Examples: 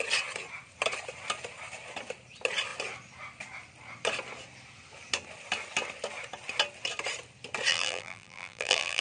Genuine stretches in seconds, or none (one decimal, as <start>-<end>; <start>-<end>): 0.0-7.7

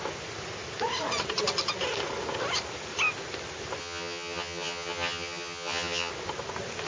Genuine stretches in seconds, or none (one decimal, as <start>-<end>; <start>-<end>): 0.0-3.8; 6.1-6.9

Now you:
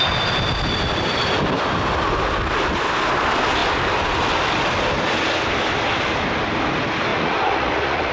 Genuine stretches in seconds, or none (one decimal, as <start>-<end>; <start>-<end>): 0.0-7.1